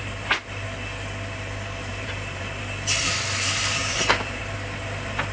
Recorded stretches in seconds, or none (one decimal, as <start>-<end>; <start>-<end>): 0.0-1.9; 4.4-5.3